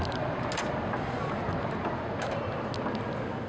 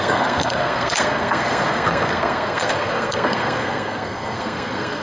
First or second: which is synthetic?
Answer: second